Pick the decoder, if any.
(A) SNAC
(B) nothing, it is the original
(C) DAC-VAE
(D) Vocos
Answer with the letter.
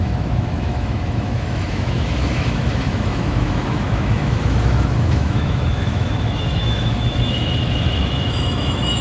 C